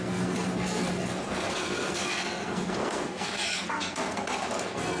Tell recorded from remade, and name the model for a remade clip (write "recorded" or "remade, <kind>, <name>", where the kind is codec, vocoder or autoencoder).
remade, codec, SNAC